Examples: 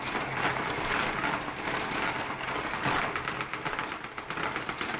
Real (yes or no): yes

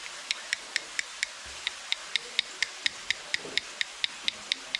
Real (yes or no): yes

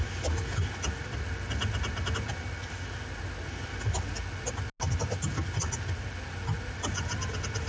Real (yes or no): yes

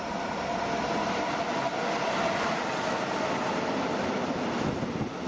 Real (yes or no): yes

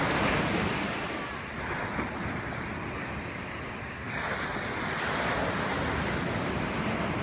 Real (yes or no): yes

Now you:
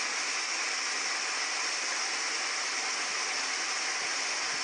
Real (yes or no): yes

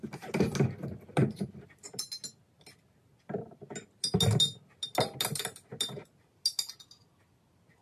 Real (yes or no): yes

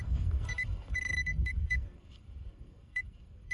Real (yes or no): no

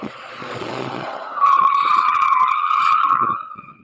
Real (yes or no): no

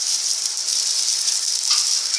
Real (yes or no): yes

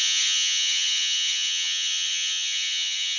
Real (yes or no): no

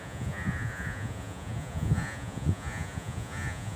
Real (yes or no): no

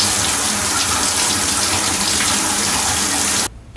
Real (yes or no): yes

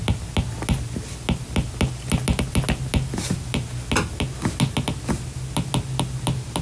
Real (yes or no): yes